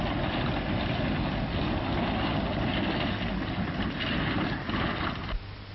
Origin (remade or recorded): recorded